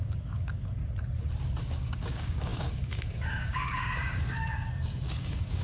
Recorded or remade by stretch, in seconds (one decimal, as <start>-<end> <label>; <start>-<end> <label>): 0.0-0.8 remade; 0.8-1.6 recorded; 1.6-5.6 remade